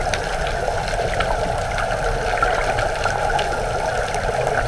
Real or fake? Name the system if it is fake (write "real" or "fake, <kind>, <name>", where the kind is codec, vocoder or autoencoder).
real